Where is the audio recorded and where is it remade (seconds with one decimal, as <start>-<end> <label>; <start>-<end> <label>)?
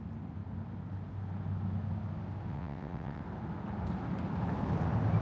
0.0-2.5 recorded; 2.5-3.2 remade; 3.2-5.2 recorded